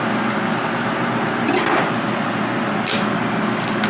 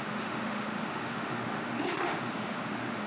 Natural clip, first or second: first